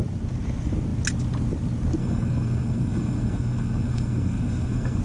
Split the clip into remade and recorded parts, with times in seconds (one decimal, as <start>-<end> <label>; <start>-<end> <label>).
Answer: 0.0-2.0 recorded; 2.0-5.0 remade